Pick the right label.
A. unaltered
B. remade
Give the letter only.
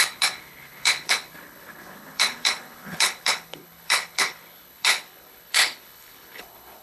B